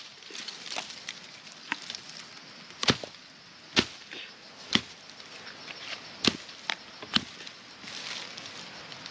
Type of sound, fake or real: real